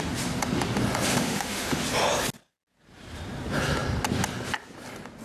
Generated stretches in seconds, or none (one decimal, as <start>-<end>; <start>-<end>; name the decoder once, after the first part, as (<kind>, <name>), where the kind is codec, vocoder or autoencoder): 1.1-1.8 (autoencoder, DAC-VAE)